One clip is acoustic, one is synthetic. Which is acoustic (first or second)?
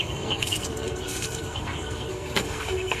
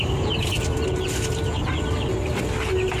second